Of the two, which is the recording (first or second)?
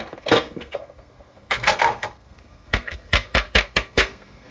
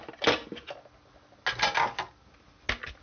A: second